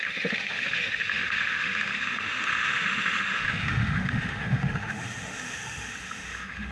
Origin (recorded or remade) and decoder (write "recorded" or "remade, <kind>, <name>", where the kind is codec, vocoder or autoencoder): remade, autoencoder, DAC-VAE